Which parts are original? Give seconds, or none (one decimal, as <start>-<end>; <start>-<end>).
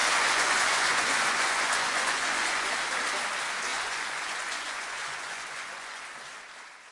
2.7-3.7; 6.0-6.9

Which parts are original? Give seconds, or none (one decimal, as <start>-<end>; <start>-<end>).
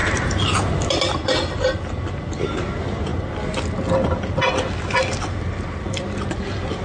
0.0-6.8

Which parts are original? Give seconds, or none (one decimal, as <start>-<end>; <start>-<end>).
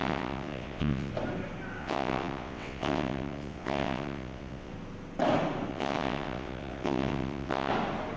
1.1-1.8; 4.7-5.7; 7.7-8.2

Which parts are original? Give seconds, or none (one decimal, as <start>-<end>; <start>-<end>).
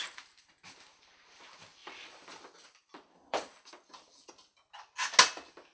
0.0-1.8; 4.3-5.7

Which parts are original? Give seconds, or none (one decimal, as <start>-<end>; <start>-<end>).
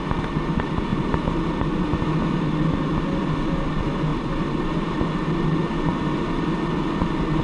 0.0-0.9; 1.6-4.1; 5.0-7.4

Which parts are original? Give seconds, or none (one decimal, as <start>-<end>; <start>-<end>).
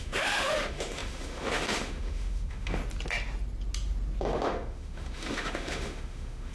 2.8-4.2